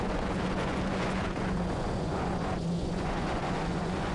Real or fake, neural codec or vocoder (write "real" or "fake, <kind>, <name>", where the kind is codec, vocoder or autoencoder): fake, vocoder, Vocos